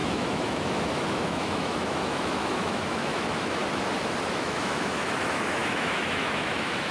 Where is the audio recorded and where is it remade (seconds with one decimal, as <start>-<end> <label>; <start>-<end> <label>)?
0.0-3.6 remade; 3.6-4.2 recorded; 4.2-6.9 remade